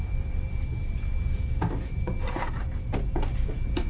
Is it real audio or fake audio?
fake